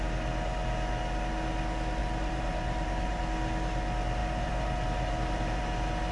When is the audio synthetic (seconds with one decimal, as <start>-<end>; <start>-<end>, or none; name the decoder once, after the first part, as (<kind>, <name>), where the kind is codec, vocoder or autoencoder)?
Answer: 2.0-3.2 (vocoder, BigVGAN v2); 4.2-5.6